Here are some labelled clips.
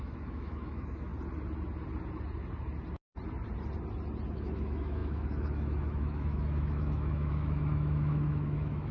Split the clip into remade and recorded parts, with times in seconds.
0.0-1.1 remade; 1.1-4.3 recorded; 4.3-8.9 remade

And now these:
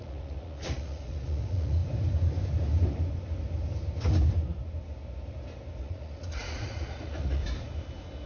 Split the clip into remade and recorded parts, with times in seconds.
0.0-1.8 remade; 1.8-5.8 recorded; 5.8-7.4 remade; 7.4-8.3 recorded

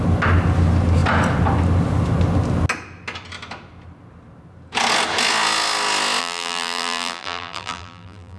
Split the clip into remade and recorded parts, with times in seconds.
0.0-6.2 recorded; 6.2-8.4 remade

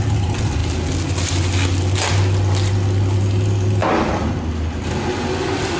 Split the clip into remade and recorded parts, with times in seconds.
0.0-5.8 recorded

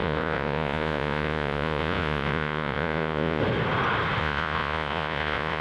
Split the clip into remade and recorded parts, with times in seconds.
0.0-3.4 remade; 3.4-4.2 recorded; 4.2-5.6 remade

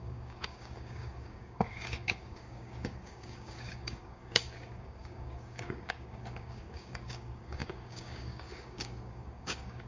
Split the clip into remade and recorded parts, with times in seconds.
0.0-9.9 remade

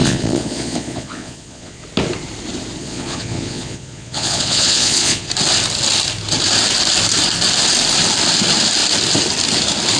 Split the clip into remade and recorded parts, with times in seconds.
0.0-1.8 remade; 1.8-2.8 recorded; 2.8-5.3 remade; 5.3-10.0 recorded

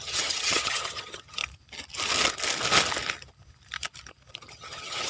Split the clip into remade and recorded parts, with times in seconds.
0.0-1.4 remade; 1.4-4.5 recorded; 4.5-5.1 remade